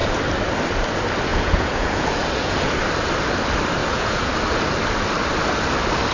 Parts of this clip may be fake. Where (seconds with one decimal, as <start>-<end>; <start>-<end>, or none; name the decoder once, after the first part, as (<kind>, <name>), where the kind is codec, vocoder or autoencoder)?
1.3-2.7 (vocoder, Vocos); 3.8-4.3